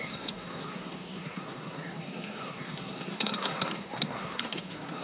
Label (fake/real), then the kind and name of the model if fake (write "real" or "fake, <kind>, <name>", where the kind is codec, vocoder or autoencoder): fake, codec, SNAC